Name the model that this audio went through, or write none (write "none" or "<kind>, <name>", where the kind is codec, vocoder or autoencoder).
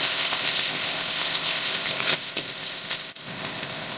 codec, ZipCodec